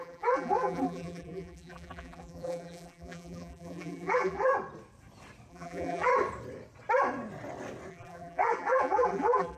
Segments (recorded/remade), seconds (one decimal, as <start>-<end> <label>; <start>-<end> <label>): 0.0-4.5 remade; 4.5-5.5 recorded; 5.5-6.1 remade; 6.1-7.9 recorded; 7.9-9.6 remade